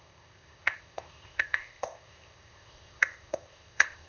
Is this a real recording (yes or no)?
no